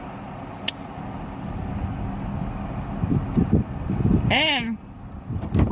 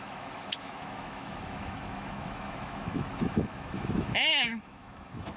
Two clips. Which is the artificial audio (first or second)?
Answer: second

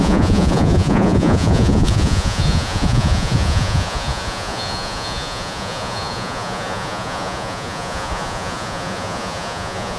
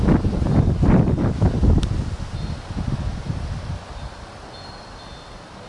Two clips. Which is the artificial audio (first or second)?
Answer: first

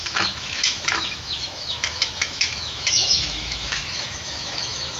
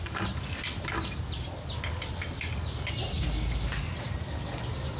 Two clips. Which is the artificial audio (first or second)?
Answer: first